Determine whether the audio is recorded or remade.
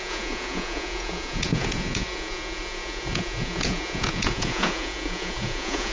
remade